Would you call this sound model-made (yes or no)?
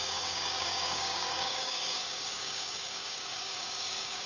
yes